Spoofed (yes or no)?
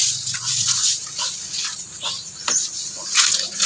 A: yes